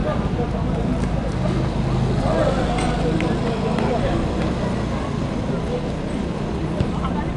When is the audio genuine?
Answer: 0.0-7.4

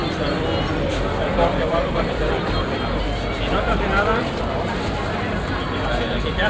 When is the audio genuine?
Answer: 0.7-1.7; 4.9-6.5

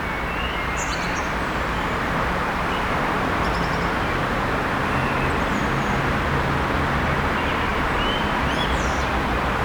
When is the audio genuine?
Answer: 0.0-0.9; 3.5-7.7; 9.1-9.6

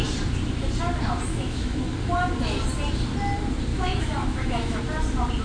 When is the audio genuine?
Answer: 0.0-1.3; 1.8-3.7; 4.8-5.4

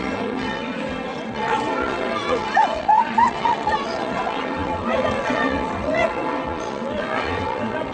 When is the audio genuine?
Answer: none

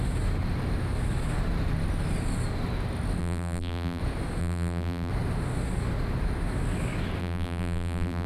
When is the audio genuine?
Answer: 0.0-3.2; 4.0-4.4; 5.1-7.2